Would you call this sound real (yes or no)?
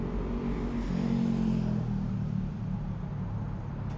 yes